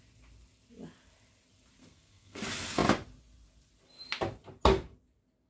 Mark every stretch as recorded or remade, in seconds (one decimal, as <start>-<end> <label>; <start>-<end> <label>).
0.0-1.8 recorded; 1.8-2.4 remade; 2.4-5.5 recorded

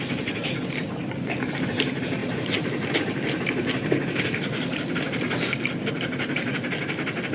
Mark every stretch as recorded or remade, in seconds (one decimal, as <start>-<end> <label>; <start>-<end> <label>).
0.0-7.3 recorded

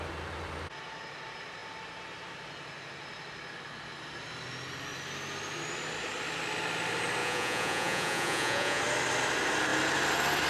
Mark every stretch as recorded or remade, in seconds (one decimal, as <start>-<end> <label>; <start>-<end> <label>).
0.0-7.2 recorded; 7.2-8.8 remade; 8.8-10.5 recorded

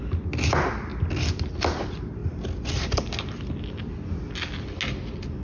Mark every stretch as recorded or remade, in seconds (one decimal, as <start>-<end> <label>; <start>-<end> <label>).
0.0-5.4 recorded